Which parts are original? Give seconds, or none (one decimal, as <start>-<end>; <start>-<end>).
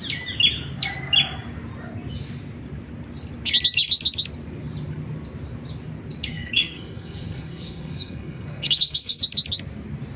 0.0-6.3; 9.2-10.2